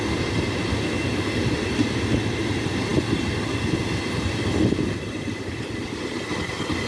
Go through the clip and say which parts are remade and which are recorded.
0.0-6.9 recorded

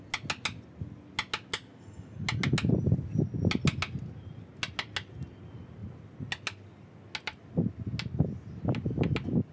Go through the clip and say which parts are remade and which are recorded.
0.0-9.5 recorded

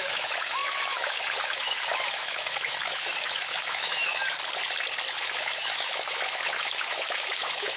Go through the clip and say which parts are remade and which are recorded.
0.0-4.2 remade; 4.2-5.2 recorded; 5.2-7.8 remade

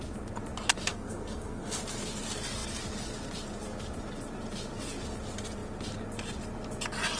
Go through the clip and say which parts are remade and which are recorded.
0.0-0.9 recorded; 0.9-1.8 remade; 1.8-7.2 recorded